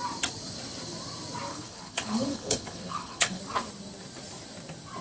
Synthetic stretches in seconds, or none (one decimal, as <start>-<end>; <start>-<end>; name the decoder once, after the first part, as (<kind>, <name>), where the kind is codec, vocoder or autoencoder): 1.5-3.4 (codec, HILCodec)